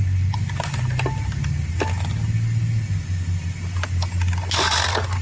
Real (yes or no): yes